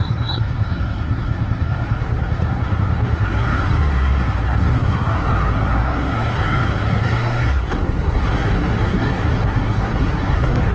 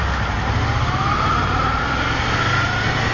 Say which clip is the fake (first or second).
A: first